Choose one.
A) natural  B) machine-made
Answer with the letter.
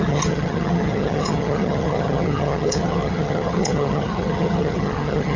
B